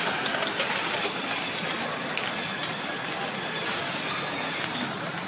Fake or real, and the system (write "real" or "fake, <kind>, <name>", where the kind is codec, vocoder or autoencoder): real